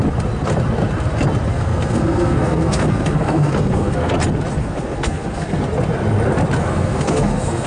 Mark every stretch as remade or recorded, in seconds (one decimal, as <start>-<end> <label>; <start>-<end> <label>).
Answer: 0.0-1.5 recorded; 1.5-4.1 remade; 4.1-4.6 recorded; 4.6-5.6 remade; 5.6-6.6 recorded; 6.6-7.7 remade